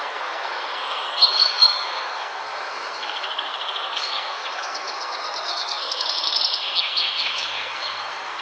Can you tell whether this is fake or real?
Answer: fake